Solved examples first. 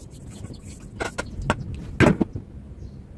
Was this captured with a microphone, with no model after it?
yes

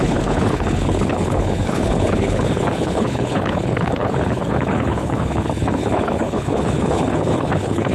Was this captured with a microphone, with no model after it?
no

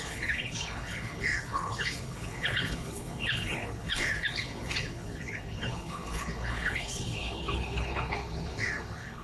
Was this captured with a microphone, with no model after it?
no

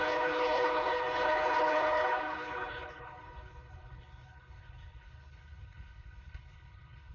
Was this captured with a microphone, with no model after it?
no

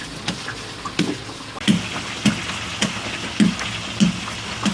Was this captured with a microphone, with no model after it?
yes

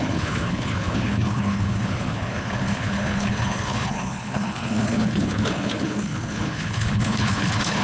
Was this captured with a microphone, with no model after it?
no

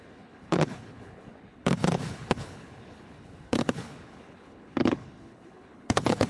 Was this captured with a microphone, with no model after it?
no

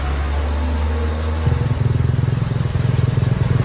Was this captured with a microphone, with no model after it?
yes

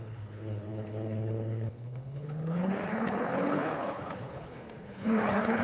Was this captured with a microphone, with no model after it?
no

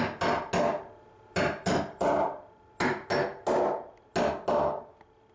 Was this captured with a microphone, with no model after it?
yes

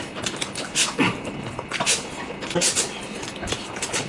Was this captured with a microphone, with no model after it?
yes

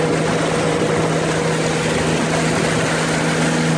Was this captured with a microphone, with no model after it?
yes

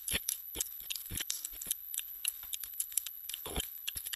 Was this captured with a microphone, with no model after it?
no